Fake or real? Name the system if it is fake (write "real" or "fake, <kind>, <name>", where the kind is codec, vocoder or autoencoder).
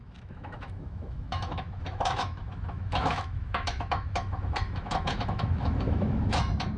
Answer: fake, autoencoder, DAC-VAE